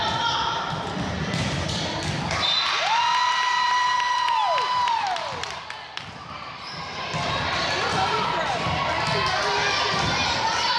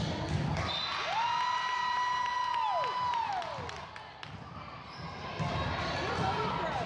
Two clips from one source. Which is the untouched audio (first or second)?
second